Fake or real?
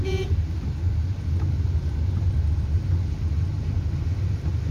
real